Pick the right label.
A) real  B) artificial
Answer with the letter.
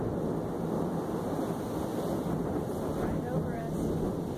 A